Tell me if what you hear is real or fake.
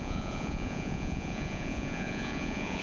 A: fake